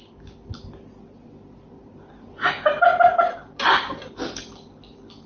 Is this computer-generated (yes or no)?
no